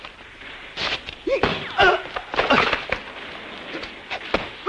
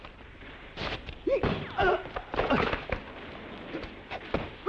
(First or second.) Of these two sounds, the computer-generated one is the second